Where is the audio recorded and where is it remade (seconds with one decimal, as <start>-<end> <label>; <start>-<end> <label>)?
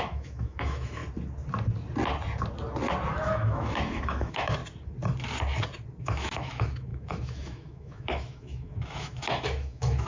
0.0-1.0 remade; 1.0-3.1 recorded; 3.1-4.6 remade; 4.6-6.0 recorded; 6.0-10.1 remade